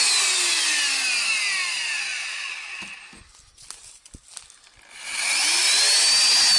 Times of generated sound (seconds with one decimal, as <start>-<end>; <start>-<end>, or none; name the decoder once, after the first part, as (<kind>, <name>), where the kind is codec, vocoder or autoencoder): none

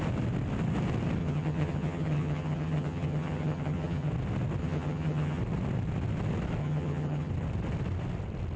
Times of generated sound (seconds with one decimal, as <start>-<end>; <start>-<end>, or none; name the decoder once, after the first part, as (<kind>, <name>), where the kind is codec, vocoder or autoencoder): 1.2-4.1 (vocoder, HiFi-GAN); 4.6-5.4; 6.6-7.3